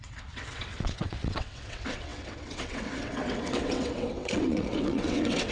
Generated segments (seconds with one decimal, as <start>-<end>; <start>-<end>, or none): 0.0-5.5